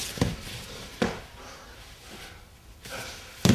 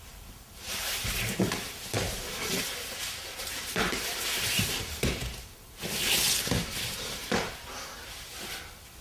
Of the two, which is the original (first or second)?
first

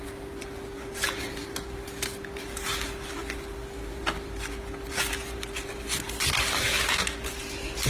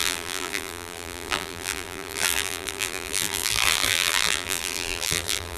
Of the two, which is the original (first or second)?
first